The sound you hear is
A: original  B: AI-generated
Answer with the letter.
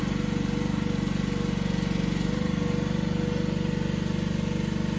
A